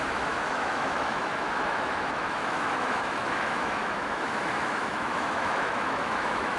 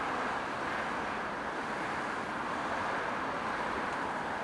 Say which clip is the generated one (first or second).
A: first